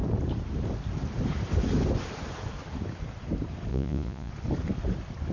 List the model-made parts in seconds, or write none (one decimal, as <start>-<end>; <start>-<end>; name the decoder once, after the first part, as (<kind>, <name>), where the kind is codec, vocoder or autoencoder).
3.7-4.3 (vocoder, Vocos)